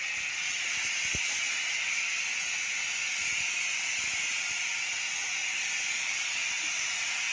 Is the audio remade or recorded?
recorded